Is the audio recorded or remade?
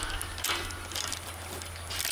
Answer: recorded